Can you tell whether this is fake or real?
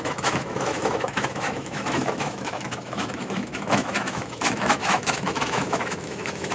fake